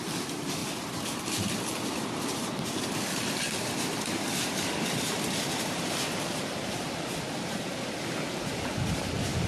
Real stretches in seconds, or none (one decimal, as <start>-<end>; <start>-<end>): none